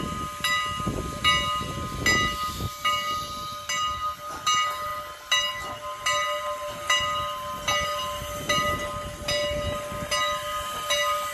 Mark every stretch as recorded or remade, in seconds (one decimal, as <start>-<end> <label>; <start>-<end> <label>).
0.0-11.3 recorded